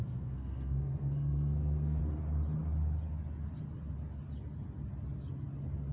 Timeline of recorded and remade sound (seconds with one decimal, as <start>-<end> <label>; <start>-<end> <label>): 0.0-2.0 remade; 2.0-5.9 recorded